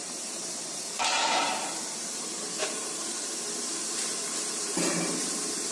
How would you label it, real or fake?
fake